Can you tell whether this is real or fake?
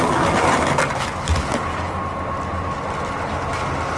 real